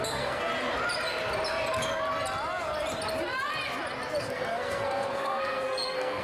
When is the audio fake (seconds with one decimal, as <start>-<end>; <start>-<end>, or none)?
0.0-0.5; 4.2-6.2